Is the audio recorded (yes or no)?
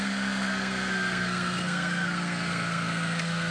no